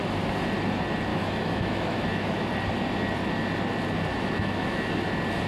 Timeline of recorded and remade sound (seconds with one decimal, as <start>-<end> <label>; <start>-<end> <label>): 0.0-1.1 recorded; 1.1-2.5 remade; 2.5-4.1 recorded; 4.1-4.9 remade; 4.9-5.5 recorded